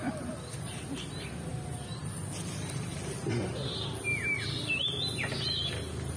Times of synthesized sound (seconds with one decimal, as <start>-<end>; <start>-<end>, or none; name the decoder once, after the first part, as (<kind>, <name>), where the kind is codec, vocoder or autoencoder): none